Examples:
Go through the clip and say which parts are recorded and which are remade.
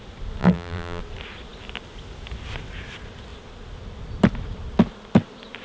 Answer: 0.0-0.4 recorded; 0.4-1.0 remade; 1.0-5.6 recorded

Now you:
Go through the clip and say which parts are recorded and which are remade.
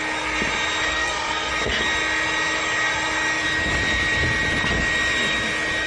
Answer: 0.0-0.9 recorded; 0.9-1.5 remade; 1.5-5.9 recorded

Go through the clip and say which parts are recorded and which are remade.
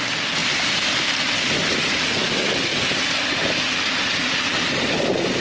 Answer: 0.0-5.4 recorded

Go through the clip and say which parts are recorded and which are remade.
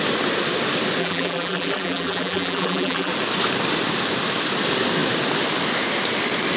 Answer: 0.0-1.0 recorded; 1.0-3.1 remade; 3.1-6.6 recorded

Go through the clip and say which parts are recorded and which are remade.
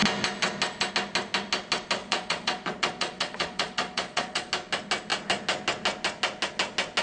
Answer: 0.0-2.0 recorded; 2.0-4.5 remade; 4.5-7.0 recorded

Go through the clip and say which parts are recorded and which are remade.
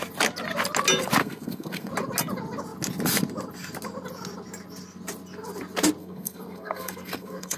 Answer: 0.0-1.2 recorded; 1.2-1.9 remade; 1.9-6.0 recorded; 6.0-7.6 remade